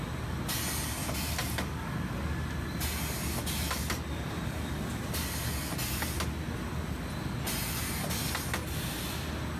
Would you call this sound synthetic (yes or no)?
no